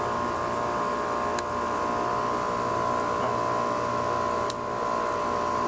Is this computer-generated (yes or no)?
no